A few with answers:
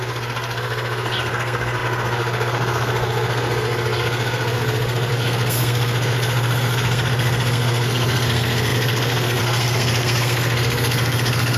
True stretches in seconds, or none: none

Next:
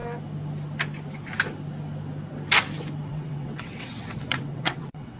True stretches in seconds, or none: 0.0-3.1

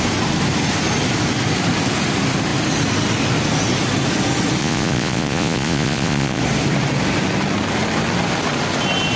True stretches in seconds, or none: 0.0-4.6; 6.4-9.2

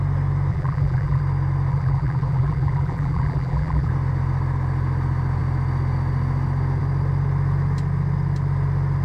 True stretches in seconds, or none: 0.0-0.5; 1.2-1.7; 3.9-9.0

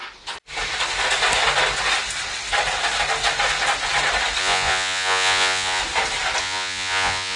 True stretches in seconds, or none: 0.0-4.4; 5.8-6.4

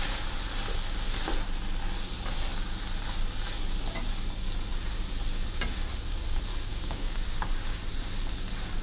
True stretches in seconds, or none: 0.0-6.7; 7.8-8.8

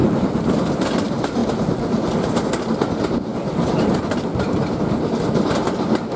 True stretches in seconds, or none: 0.0-6.2

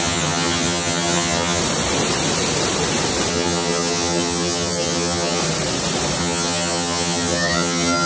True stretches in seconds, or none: 1.6-3.3; 5.4-6.2